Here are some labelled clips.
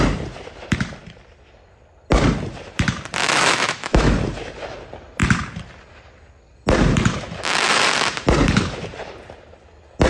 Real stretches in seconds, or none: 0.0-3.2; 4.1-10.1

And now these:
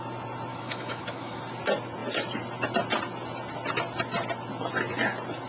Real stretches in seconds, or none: 0.0-0.5; 1.4-5.5

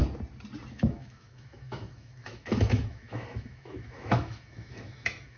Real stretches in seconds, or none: 0.0-0.7

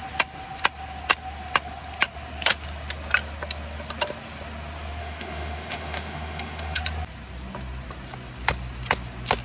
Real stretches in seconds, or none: 0.0-5.0; 6.8-9.4